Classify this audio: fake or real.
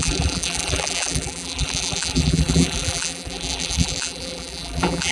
fake